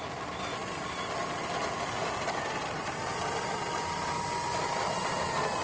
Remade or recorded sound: recorded